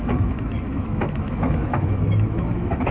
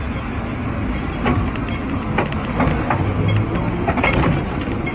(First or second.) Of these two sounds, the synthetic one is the first